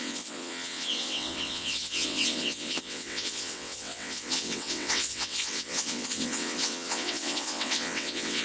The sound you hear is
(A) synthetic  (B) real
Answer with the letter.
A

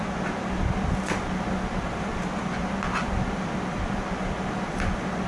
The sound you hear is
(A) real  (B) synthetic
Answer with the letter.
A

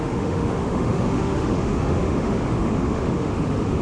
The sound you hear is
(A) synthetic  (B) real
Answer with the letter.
A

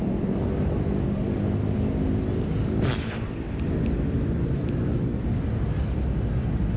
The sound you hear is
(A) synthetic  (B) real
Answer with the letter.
B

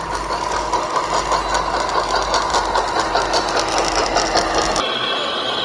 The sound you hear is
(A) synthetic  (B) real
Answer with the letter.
B